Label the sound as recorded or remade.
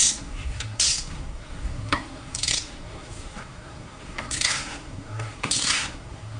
remade